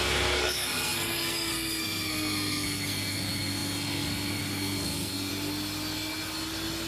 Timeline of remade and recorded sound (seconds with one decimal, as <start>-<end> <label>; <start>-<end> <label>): 0.0-5.3 remade; 5.3-6.9 recorded